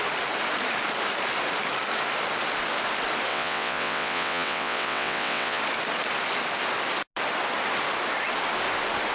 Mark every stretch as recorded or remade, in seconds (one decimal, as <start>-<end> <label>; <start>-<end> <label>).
0.0-3.3 recorded; 3.3-5.6 remade; 5.6-9.1 recorded